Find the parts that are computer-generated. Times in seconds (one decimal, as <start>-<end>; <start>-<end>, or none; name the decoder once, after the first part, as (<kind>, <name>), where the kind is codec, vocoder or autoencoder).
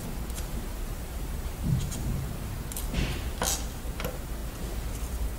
0.5-2.3 (vocoder, BigVGAN v2)